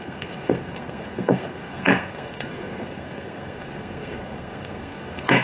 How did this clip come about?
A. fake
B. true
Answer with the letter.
A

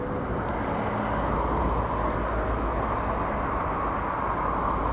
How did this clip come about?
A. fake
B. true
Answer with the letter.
B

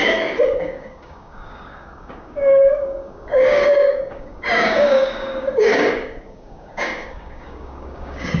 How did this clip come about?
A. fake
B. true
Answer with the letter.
A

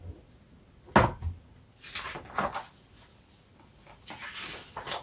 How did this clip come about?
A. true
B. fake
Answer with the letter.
A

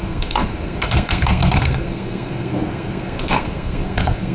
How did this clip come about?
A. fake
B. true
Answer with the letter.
A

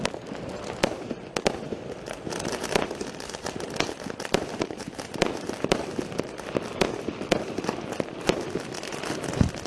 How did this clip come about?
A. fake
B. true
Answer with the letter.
B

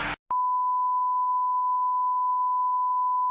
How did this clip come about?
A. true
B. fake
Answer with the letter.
A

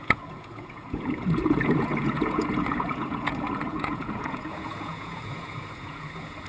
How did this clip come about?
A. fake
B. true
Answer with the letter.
A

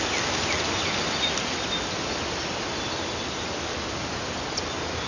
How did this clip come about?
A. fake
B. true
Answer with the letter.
B